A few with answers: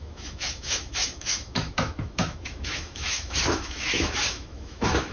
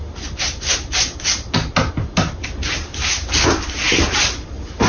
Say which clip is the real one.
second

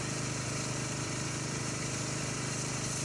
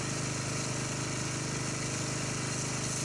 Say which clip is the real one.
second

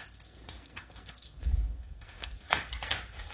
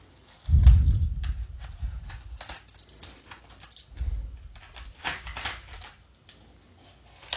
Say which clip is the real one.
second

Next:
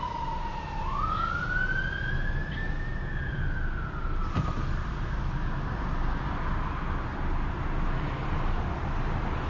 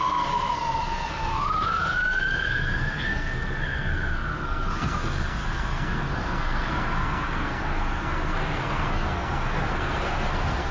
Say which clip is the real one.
first